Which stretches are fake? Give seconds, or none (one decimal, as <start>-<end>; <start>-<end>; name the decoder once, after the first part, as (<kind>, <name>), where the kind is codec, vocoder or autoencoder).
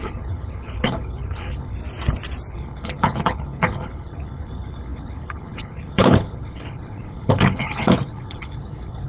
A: 0.0-1.8 (codec, HILCodec); 2.5-9.1